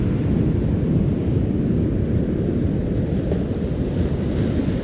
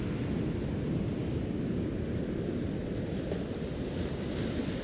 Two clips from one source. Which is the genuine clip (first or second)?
second